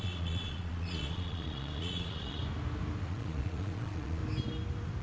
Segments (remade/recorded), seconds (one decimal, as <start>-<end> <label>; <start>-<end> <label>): 0.0-2.4 remade; 2.4-3.1 recorded; 3.1-4.2 remade; 4.2-5.0 recorded